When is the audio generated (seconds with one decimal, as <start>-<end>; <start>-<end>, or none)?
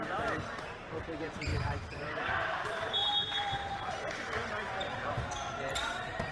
0.0-6.3